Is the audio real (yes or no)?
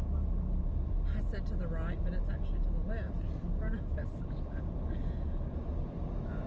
yes